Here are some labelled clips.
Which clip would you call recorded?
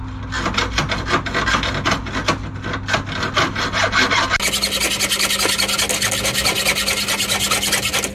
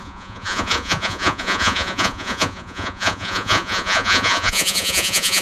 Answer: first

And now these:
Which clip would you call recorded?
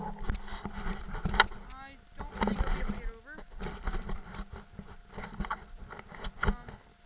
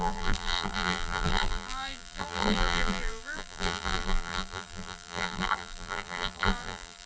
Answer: first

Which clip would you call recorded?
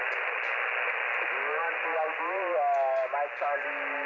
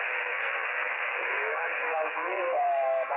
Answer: first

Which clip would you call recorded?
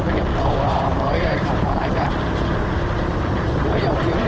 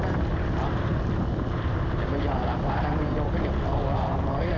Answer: second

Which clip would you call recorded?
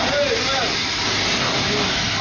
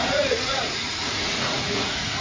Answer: first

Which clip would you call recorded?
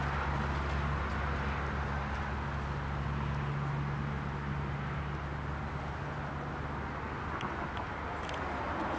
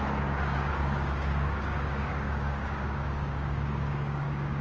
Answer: first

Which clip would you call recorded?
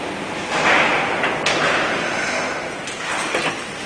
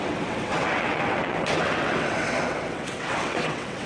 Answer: first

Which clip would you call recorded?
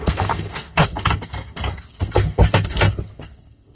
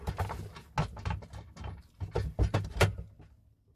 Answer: second